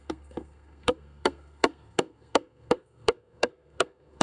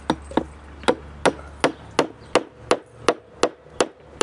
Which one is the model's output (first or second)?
first